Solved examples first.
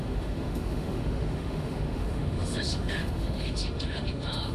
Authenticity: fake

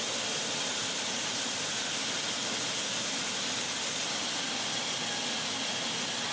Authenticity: real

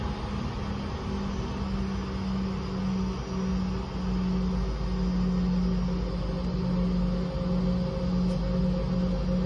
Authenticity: real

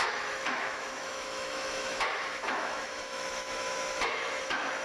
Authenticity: fake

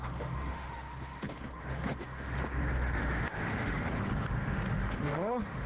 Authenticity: fake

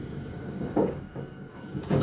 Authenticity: fake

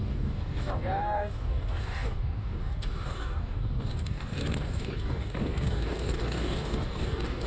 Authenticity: fake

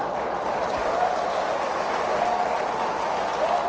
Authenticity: real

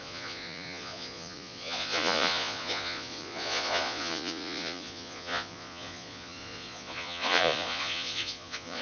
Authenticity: fake